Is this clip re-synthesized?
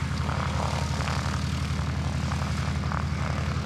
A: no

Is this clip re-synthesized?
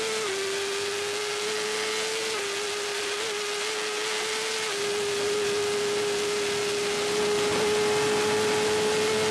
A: no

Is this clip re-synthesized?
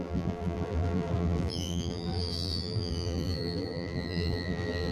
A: yes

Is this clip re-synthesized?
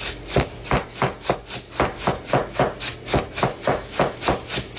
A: no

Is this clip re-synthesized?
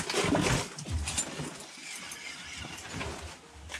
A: no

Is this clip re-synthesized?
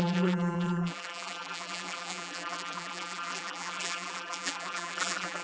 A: yes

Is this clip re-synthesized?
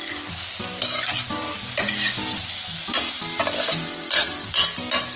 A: no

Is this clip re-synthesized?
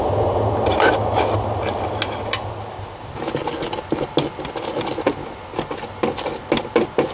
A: no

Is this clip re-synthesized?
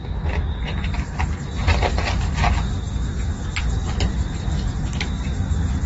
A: no